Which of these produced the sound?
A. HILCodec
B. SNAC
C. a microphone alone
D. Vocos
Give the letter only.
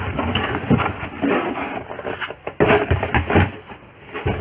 C